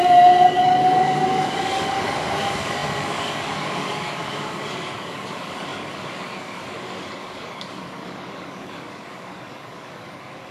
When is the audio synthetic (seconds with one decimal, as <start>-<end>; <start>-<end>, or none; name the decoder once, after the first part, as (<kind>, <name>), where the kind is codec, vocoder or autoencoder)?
0.0-10.5 (codec, DAC)